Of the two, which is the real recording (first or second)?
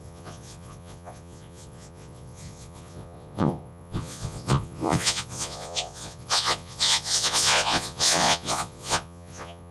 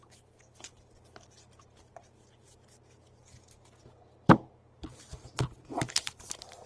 second